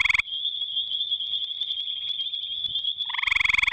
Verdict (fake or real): real